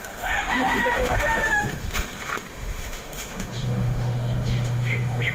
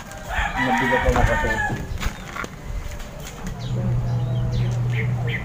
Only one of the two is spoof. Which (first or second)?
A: first